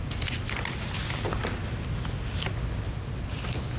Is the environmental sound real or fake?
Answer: real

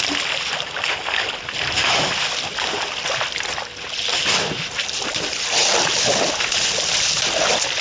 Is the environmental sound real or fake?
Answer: real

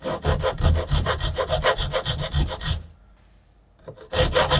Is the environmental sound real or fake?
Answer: real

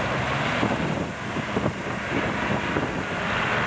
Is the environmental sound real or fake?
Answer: real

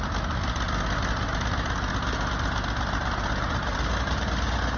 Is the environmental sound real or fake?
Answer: real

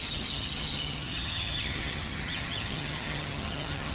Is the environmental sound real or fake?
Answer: fake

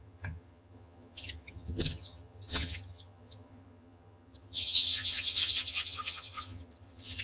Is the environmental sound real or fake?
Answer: fake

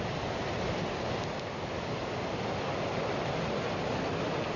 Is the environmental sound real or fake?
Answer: real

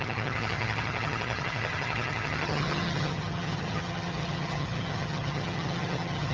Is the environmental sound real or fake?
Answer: fake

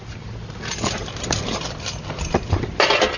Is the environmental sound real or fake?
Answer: real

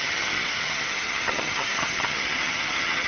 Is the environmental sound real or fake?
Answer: fake